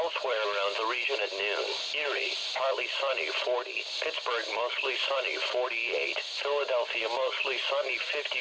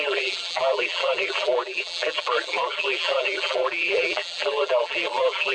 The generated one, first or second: second